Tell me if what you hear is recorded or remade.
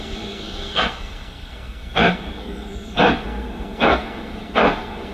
remade